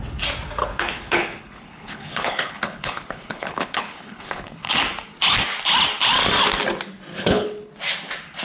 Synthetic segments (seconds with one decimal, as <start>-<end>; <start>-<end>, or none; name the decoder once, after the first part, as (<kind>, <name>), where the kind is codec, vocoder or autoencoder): 0.6-4.7 (codec, HILCodec); 7.1-7.7